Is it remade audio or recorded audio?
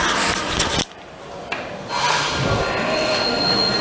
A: recorded